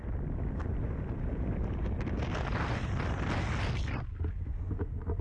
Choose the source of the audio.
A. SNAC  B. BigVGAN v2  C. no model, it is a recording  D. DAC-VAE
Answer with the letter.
C